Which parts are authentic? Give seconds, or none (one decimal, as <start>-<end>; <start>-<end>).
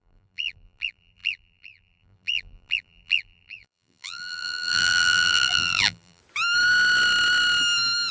6.2-8.1